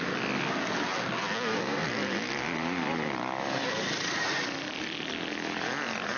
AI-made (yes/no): no